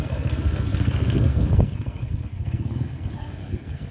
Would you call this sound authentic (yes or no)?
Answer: no